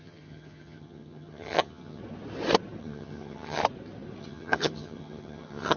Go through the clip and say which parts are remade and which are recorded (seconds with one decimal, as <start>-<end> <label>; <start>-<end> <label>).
0.0-2.0 remade; 2.0-2.8 recorded; 2.8-3.6 remade; 3.6-4.2 recorded; 4.2-5.8 remade